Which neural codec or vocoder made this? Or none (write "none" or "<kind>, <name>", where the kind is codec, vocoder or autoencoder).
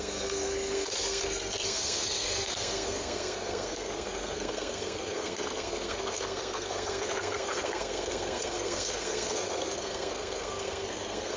codec, SNAC